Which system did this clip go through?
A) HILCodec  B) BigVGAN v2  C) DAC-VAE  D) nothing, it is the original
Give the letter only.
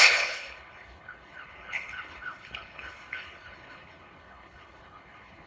A